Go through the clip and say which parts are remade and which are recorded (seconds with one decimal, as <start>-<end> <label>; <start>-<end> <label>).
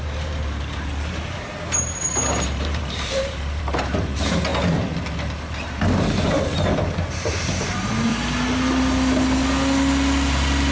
0.0-4.5 remade; 4.5-7.2 recorded; 7.2-8.1 remade; 8.1-10.7 recorded